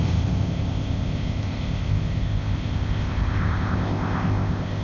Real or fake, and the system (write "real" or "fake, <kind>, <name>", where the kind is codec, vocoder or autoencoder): fake, codec, ZipCodec